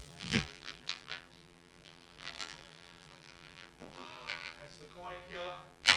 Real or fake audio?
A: fake